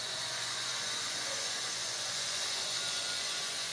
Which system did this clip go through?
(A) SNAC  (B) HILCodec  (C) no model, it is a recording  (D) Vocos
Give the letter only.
D